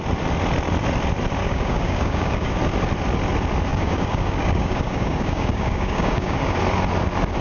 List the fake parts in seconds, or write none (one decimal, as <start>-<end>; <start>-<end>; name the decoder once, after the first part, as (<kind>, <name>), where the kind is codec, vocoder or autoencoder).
1.4-2.6 (codec, DAC); 3.7-6.6